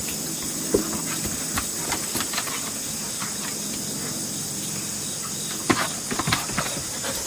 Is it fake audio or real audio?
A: real